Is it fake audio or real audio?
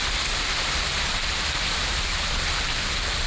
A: real